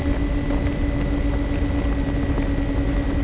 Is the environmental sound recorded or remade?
recorded